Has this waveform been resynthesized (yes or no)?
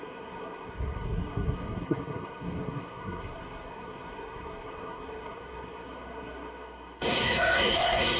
yes